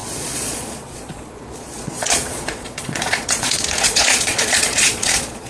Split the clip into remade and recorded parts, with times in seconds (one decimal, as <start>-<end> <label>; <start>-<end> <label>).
0.0-5.5 remade